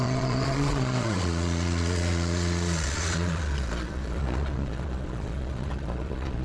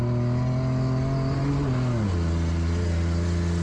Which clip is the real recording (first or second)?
second